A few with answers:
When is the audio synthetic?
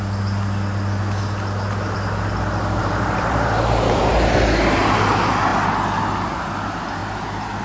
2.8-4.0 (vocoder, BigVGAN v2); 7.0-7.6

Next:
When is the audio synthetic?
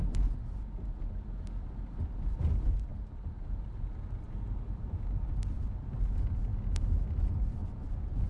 7.6-8.3 (vocoder, BigVGAN v2)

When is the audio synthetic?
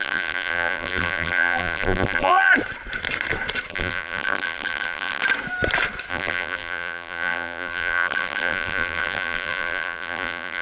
0.0-2.5 (vocoder, BigVGAN v2); 3.7-5.2; 6.1-10.6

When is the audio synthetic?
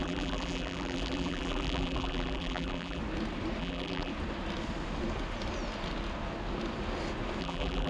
0.0-3.0 (vocoder, BigVGAN v2); 3.6-4.1; 7.4-7.9